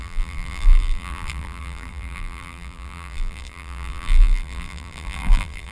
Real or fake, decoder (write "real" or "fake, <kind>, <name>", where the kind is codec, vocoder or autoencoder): fake, vocoder, BigVGAN v2